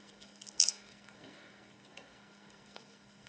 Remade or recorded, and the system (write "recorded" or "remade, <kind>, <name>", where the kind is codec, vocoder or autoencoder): remade, codec, SNAC